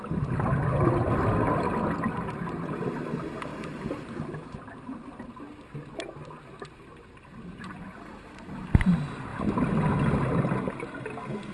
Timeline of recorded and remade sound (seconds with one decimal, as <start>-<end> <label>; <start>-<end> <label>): 0.0-3.5 recorded; 3.5-5.4 remade; 5.4-11.5 recorded